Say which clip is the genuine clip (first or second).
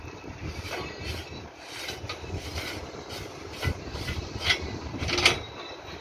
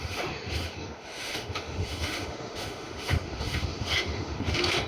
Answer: first